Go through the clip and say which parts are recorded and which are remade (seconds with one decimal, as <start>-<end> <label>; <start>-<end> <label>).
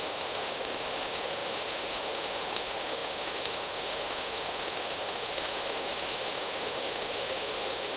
0.0-8.0 remade